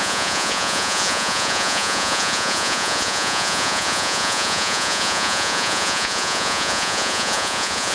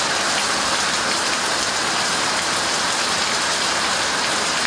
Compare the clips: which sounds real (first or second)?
second